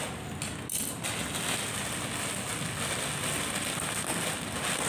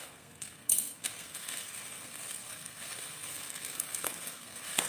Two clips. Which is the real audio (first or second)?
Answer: first